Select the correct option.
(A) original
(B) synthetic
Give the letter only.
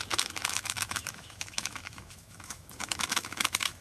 B